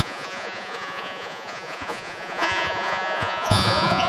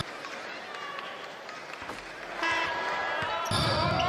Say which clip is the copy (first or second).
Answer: first